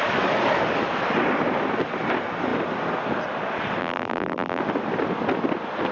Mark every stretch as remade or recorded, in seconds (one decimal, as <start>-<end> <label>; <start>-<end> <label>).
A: 0.0-3.8 recorded; 3.8-4.6 remade; 4.6-5.9 recorded